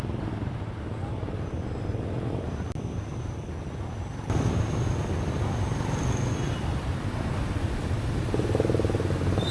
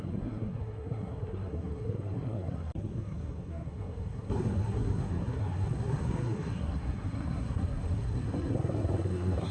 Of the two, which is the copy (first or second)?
second